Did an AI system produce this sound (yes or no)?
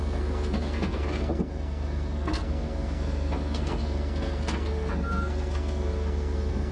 yes